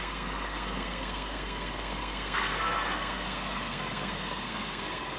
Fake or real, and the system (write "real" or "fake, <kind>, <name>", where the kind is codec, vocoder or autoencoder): fake, codec, SNAC